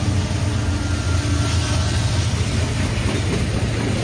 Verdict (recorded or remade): recorded